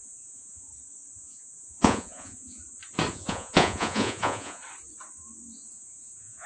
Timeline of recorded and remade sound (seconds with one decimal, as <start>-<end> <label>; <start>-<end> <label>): 0.0-0.7 remade; 0.7-1.2 recorded; 1.2-2.6 remade; 2.6-3.1 recorded; 3.1-4.6 remade; 4.6-5.7 recorded; 5.7-6.5 remade